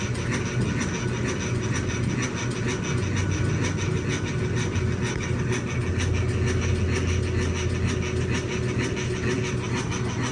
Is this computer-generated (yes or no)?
no